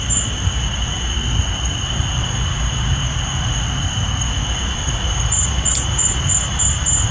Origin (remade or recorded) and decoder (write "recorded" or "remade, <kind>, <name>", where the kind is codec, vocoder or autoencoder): recorded